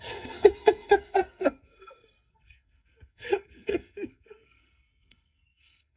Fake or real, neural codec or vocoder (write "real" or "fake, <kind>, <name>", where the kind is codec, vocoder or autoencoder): fake, codec, SNAC